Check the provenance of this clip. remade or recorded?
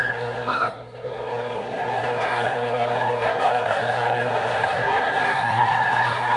remade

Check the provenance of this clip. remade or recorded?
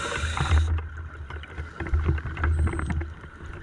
recorded